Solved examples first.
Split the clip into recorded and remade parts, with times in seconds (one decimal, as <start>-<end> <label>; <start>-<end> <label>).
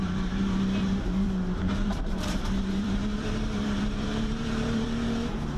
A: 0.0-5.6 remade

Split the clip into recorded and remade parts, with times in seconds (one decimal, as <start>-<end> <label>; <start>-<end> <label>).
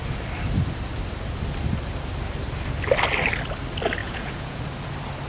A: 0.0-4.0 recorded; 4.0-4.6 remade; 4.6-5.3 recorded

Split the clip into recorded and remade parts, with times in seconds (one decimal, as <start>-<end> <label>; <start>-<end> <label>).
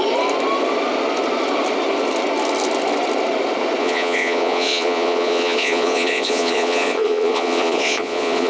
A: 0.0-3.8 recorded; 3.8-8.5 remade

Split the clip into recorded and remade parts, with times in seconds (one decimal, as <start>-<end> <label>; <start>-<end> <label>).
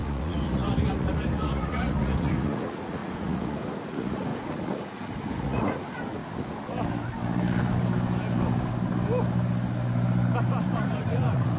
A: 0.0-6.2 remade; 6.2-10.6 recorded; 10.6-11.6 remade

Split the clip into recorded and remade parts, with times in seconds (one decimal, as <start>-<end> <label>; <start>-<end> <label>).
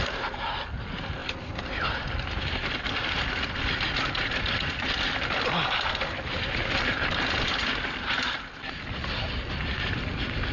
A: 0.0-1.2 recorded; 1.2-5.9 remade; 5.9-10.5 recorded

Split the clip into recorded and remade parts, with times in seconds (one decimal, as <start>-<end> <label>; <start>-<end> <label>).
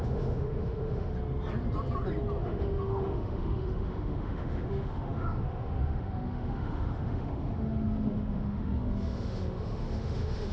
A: 0.0-1.1 remade; 1.1-2.4 recorded; 2.4-10.5 remade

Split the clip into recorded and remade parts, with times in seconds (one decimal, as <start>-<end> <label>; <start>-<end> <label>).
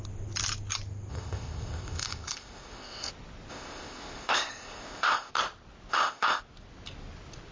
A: 0.0-1.1 recorded; 1.1-3.1 remade; 3.1-3.5 recorded; 3.5-5.3 remade; 5.3-5.9 recorded; 5.9-6.4 remade; 6.4-7.5 recorded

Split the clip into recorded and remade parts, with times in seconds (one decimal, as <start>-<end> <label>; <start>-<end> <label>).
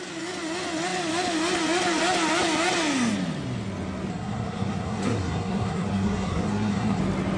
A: 0.0-4.1 recorded; 4.1-7.0 remade; 7.0-7.4 recorded